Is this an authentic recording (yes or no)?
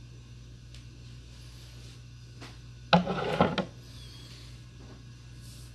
yes